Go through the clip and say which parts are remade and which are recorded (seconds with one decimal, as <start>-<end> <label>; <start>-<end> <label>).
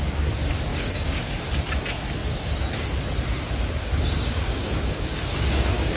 0.0-0.7 recorded; 0.7-1.3 remade; 1.3-4.2 recorded; 4.2-6.0 remade